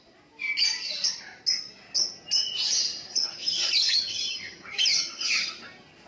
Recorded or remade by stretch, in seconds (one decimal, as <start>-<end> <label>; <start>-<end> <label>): 0.0-3.1 recorded; 3.1-5.5 remade; 5.5-6.1 recorded